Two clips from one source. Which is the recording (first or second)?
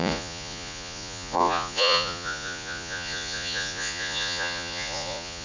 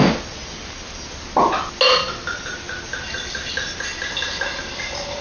second